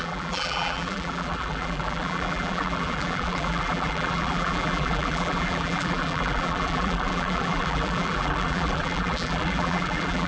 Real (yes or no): no